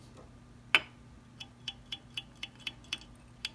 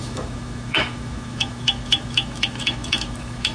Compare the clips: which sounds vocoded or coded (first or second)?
second